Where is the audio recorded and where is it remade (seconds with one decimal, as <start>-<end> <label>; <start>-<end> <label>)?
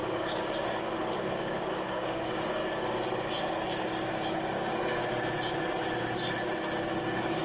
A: 0.0-2.6 remade; 2.6-3.3 recorded; 3.3-5.0 remade; 5.0-7.0 recorded; 7.0-7.4 remade